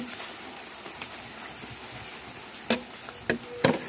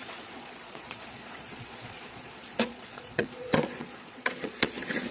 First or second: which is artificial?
second